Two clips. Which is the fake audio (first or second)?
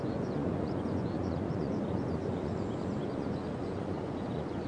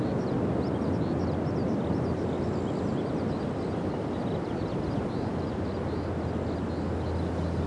first